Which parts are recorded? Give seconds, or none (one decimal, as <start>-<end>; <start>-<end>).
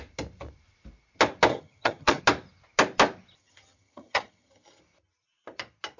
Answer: 0.0-1.5; 2.2-3.4; 4.8-6.0